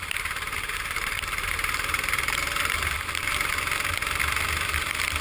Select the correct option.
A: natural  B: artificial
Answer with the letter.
B